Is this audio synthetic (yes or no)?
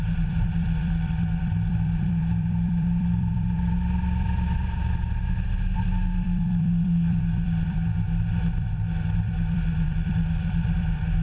yes